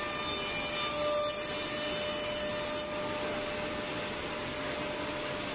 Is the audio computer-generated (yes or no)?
no